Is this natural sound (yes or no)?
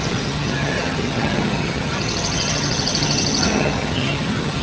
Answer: no